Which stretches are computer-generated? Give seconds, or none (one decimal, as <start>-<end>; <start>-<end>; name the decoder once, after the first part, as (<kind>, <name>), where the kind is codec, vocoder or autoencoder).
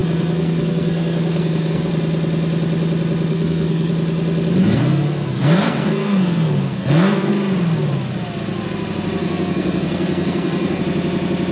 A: 0.0-1.9 (codec, SNAC); 3.3-3.9; 4.6-7.3; 9.2-10.8